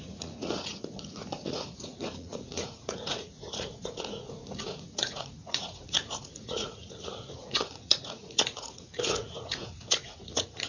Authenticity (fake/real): fake